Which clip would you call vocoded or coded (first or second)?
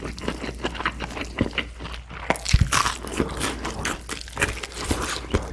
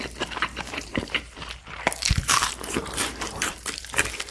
second